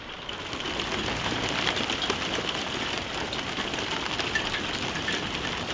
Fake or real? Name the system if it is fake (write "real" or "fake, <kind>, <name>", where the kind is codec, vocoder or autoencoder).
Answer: real